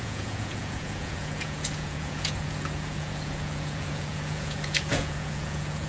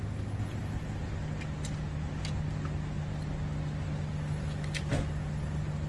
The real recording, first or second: second